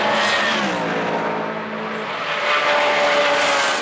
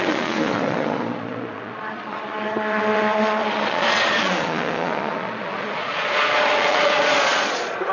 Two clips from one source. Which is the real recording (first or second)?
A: first